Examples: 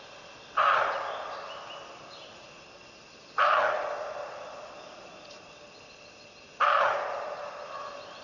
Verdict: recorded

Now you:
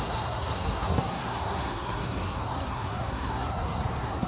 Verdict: remade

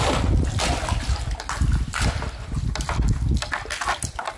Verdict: recorded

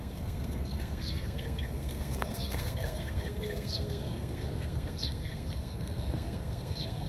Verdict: remade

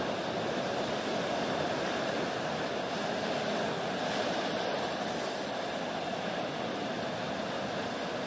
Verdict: recorded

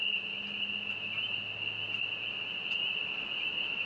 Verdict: recorded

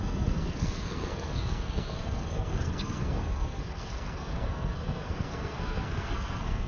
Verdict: remade